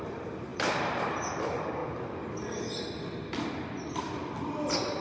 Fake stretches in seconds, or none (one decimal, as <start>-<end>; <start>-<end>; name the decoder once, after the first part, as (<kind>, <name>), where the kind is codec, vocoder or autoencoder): 0.0-1.8 (vocoder, BigVGAN v2)